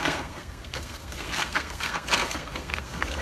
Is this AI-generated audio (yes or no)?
yes